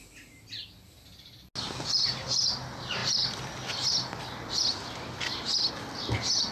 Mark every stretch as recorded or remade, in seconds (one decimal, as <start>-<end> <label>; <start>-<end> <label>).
0.0-6.5 recorded

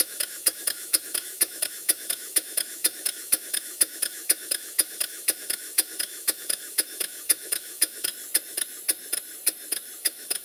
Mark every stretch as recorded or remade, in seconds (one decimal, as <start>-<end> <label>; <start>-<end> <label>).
0.0-8.1 remade; 8.1-10.0 recorded; 10.0-10.4 remade

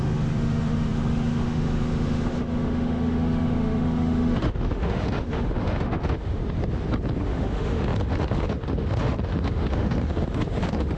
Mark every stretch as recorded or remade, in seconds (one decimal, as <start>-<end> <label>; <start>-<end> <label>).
0.0-6.4 remade; 6.4-7.2 recorded; 7.2-11.0 remade

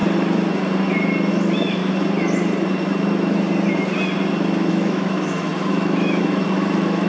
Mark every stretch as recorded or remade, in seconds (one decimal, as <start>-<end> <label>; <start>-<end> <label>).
0.0-1.3 recorded; 1.3-1.8 remade; 1.8-4.7 recorded; 4.7-7.1 remade

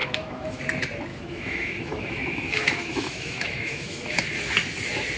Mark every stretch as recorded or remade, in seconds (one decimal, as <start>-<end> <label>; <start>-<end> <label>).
0.0-0.6 remade; 0.6-1.1 recorded; 1.1-4.2 remade; 4.2-5.2 recorded